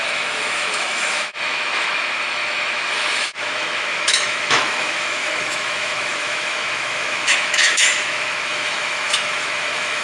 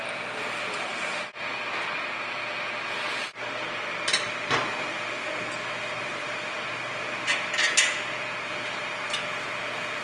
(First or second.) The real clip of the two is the second